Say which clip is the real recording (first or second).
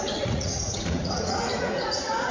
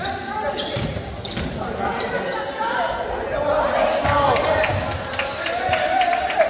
second